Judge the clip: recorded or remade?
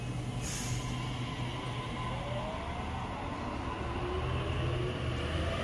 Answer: recorded